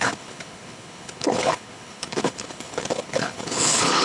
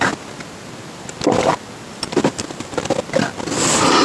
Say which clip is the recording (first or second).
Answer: second